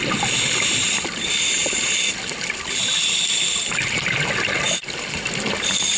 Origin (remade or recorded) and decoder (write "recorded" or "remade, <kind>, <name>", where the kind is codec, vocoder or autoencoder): recorded